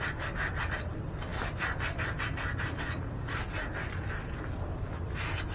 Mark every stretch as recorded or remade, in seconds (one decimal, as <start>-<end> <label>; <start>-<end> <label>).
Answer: 0.0-5.5 recorded